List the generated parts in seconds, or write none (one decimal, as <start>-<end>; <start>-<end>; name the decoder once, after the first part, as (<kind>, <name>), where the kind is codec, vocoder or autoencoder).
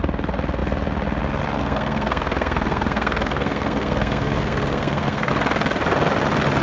1.6-5.3 (codec, SNAC)